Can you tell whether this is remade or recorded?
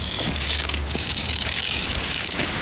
remade